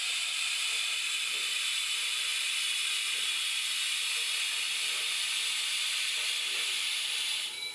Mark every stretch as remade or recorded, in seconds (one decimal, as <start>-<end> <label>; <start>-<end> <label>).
0.0-7.7 remade